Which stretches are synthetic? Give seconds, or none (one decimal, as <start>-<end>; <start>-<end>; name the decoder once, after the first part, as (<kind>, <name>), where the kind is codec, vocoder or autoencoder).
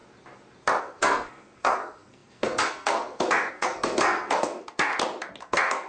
0.8-4.9 (codec, SNAC); 5.4-5.9